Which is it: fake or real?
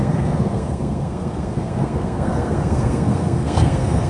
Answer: fake